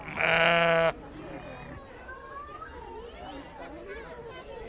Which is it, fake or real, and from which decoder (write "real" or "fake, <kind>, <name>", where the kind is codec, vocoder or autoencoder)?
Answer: real